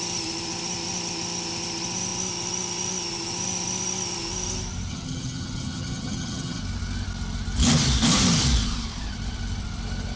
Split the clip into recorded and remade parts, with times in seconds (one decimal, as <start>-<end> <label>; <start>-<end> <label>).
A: 0.0-4.9 recorded; 4.9-6.6 remade; 6.6-10.2 recorded